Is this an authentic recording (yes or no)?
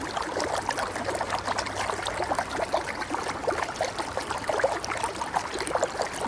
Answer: yes